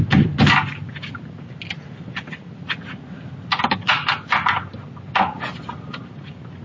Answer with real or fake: real